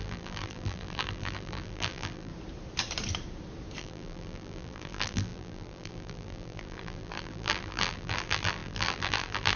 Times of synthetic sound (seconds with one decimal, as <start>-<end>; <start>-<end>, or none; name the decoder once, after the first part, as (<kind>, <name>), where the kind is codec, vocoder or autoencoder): 0.0-2.3 (vocoder, BigVGAN v2); 3.8-9.6

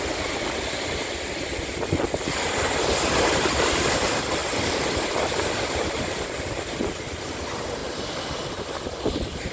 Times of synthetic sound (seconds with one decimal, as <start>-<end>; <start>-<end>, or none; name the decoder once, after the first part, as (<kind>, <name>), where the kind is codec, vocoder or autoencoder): none

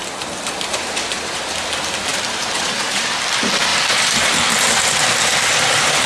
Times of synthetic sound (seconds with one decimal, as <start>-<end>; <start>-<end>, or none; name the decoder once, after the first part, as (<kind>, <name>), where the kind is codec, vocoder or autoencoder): 0.0-1.4 (vocoder, BigVGAN v2); 2.1-3.0; 3.7-4.8

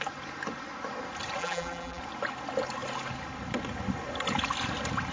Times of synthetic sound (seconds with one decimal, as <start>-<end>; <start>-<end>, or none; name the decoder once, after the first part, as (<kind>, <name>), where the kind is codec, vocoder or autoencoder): 1.4-2.0 (vocoder, BigVGAN v2)